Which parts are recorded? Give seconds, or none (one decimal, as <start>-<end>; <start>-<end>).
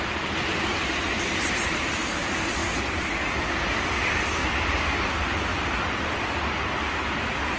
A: 0.0-0.5; 1.7-7.6